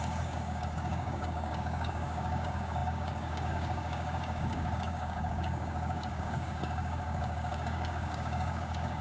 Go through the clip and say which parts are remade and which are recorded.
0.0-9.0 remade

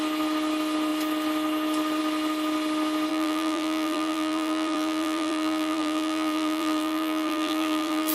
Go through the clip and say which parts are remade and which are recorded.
0.0-3.1 recorded; 3.1-8.1 remade

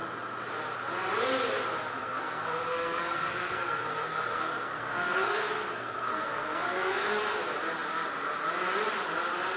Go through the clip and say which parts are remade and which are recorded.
0.0-2.0 recorded; 2.0-7.2 remade; 7.2-9.6 recorded

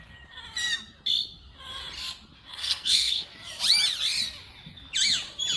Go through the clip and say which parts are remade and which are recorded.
0.0-2.5 recorded; 2.5-3.3 remade; 3.3-5.6 recorded

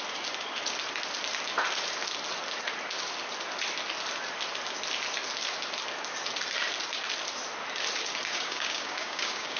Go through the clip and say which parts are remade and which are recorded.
0.0-8.3 recorded; 8.3-9.6 remade

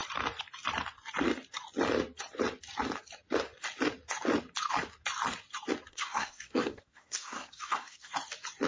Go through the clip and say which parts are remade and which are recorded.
0.0-5.9 recorded; 5.9-8.1 remade; 8.1-8.7 recorded

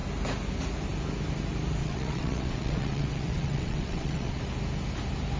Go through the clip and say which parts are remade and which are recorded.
0.0-1.8 recorded; 1.8-4.4 remade; 4.4-5.4 recorded

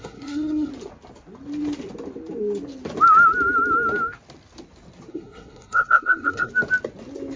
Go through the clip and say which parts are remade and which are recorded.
0.0-0.7 remade; 0.7-5.1 recorded; 5.1-6.5 remade; 6.5-7.4 recorded